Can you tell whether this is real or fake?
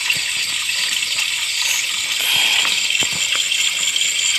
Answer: real